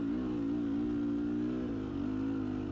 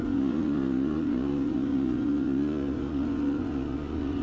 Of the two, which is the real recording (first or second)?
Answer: first